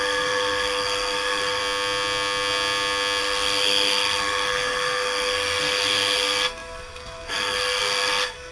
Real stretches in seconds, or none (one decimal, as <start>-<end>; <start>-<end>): 1.6-3.2